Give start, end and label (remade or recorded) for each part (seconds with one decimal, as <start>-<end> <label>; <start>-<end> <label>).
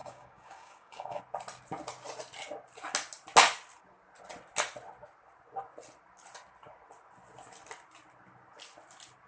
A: 0.0-1.2 remade; 1.2-9.3 recorded